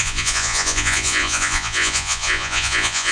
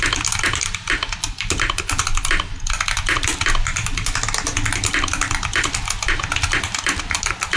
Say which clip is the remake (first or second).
first